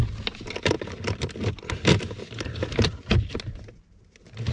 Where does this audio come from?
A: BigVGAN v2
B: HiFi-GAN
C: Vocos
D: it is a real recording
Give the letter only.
D